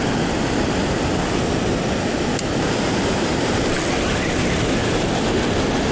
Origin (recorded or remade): recorded